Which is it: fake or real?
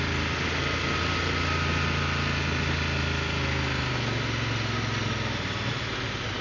real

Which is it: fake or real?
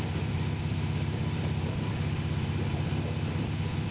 fake